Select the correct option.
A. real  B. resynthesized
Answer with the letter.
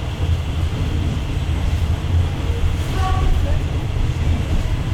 A